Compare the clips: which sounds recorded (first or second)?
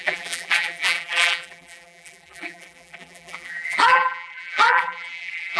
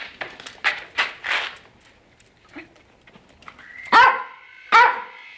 second